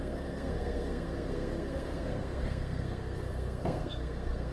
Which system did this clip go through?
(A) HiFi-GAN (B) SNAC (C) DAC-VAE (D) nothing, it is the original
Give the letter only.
B